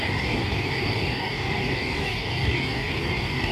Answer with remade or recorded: remade